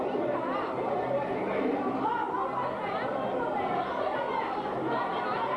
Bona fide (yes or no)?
yes